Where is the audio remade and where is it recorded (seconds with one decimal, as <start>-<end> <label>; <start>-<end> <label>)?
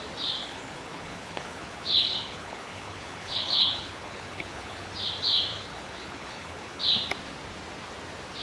0.0-0.4 recorded; 0.4-4.9 remade; 4.9-5.5 recorded; 5.5-6.8 remade; 6.8-8.4 recorded